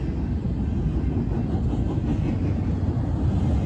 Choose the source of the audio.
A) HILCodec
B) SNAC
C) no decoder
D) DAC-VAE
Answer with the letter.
C